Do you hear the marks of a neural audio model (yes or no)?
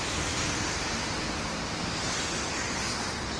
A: no